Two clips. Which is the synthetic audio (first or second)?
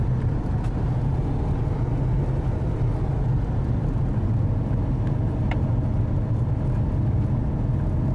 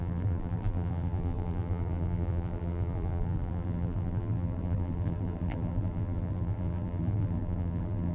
second